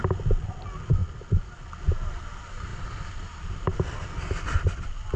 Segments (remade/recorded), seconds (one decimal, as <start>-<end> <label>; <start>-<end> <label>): 0.0-2.7 recorded; 2.7-4.0 remade; 4.0-5.2 recorded